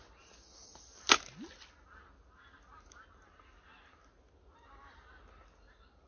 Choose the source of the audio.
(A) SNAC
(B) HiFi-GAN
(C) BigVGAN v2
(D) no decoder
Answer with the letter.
D